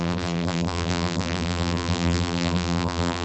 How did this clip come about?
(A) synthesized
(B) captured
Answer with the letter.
A